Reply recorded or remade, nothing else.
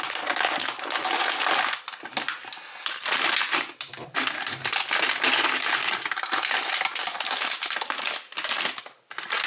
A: recorded